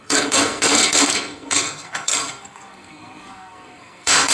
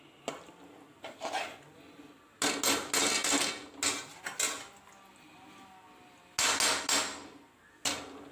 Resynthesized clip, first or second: first